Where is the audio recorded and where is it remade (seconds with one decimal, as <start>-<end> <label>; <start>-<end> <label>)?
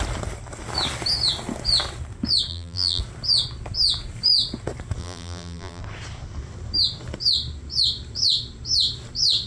0.0-2.5 recorded; 2.5-3.0 remade; 3.0-5.0 recorded; 5.0-5.8 remade; 5.8-9.5 recorded